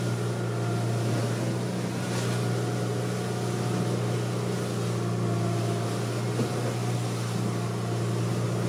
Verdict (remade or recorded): recorded